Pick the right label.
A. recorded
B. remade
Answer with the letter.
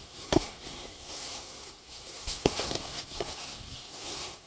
B